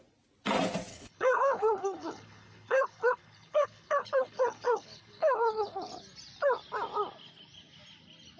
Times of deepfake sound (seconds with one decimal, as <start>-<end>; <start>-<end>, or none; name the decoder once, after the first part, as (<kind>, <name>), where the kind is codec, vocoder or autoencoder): 0.9-5.9 (codec, HILCodec)

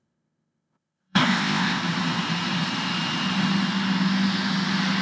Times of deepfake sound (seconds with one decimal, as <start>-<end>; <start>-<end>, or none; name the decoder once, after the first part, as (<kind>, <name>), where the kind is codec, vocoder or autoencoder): 0.0-1.8 (codec, ZipCodec)

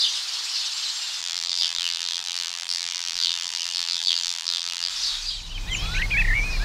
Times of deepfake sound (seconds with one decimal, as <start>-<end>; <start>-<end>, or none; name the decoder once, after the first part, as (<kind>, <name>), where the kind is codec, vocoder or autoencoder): 1.2-4.9 (vocoder, BigVGAN v2)

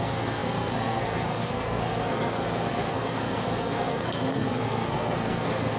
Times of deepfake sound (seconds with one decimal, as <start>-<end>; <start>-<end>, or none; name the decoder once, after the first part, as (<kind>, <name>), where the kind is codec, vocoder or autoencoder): 0.0-5.8 (codec, SNAC)

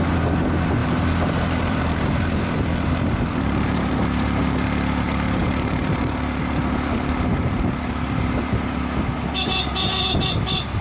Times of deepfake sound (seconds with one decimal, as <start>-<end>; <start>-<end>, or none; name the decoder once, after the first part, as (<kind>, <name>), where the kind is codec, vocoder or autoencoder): 0.8-3.9 (vocoder, BigVGAN v2); 5.4-6.4

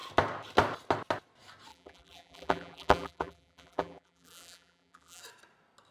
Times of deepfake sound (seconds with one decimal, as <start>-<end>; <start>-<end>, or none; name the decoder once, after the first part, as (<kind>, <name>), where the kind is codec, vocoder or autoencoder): 1.7-5.2 (vocoder, BigVGAN v2)

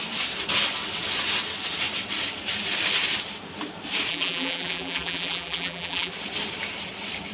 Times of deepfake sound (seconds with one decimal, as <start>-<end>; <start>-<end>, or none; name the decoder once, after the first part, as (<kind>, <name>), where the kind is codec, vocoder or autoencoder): 4.1-6.1 (vocoder, BigVGAN v2)

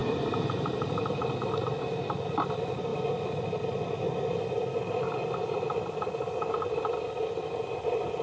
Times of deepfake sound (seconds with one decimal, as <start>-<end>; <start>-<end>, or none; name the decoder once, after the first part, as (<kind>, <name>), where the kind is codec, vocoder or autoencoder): none